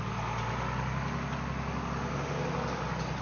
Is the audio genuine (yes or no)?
yes